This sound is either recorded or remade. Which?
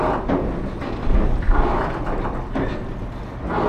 recorded